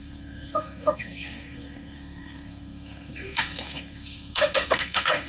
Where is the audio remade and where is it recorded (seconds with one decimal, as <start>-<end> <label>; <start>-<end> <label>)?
0.0-5.3 remade